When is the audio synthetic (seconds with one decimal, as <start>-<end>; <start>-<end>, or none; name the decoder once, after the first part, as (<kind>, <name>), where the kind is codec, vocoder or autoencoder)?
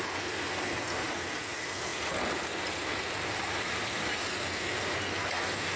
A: none